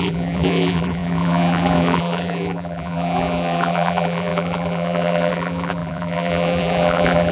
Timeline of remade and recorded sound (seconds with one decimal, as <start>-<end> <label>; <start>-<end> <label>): 0.0-7.3 remade